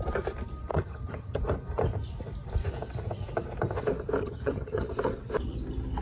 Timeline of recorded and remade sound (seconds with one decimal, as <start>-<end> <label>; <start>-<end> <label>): 0.0-0.7 recorded; 0.7-1.4 remade; 1.4-4.2 recorded; 4.2-4.9 remade; 4.9-6.0 recorded